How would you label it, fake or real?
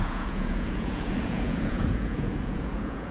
fake